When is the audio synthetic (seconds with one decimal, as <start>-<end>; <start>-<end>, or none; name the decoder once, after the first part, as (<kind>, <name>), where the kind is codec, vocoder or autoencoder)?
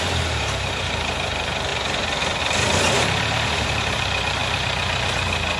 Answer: 0.0-1.7 (vocoder, BigVGAN v2); 2.4-4.4